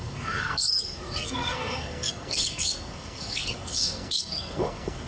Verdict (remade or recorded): remade